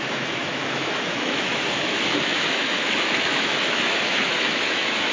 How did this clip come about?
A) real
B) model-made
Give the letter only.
B